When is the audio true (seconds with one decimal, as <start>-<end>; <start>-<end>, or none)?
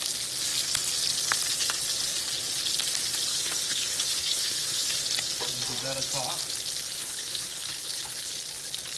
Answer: 0.0-3.3; 4.9-7.0; 8.3-9.0